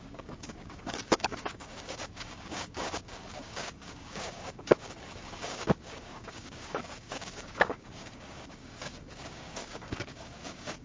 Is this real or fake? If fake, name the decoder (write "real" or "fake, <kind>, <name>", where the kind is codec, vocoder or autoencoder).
fake, codec, DAC